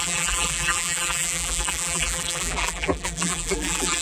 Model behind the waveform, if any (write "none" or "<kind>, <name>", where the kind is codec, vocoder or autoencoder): vocoder, BigVGAN v2